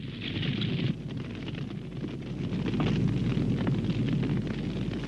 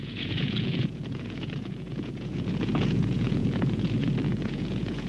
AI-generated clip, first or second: second